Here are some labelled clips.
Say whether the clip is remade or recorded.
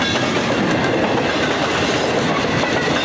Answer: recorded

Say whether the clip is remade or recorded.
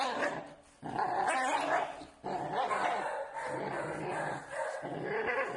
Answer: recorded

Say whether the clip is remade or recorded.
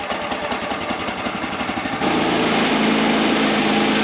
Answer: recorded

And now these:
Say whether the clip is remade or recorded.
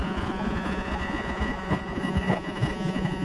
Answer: remade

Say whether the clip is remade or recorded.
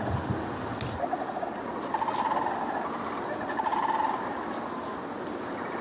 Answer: recorded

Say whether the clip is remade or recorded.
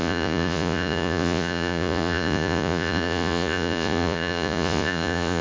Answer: remade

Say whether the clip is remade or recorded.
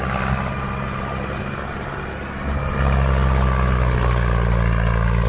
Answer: recorded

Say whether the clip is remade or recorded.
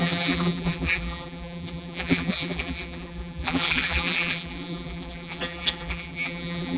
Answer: remade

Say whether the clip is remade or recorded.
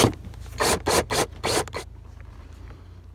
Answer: recorded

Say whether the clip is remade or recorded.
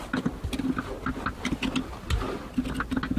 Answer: recorded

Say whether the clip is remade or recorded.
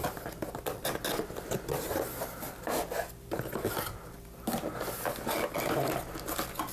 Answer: recorded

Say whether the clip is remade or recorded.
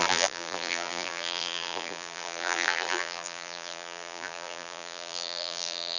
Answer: remade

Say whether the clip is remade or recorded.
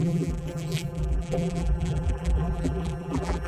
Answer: remade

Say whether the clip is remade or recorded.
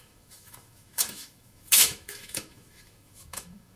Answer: remade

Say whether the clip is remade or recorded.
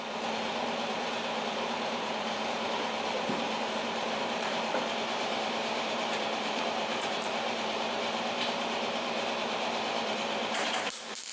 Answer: remade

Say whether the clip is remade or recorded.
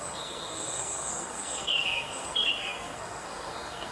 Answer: remade